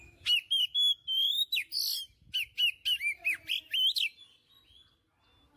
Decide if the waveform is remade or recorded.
recorded